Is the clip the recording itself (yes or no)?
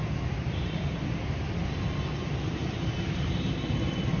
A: no